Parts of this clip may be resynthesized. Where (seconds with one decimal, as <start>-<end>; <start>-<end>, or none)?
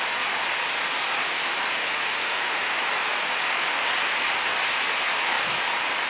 1.8-2.8